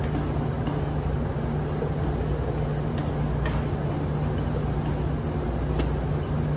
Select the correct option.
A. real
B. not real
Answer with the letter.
A